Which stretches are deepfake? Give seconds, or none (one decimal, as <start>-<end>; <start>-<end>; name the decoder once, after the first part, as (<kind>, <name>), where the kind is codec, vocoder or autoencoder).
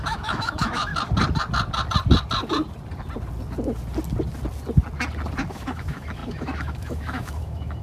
0.0-0.9 (autoencoder, DAC-VAE); 5.5-7.8